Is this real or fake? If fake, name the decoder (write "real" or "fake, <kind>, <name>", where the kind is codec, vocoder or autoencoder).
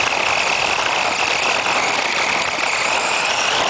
real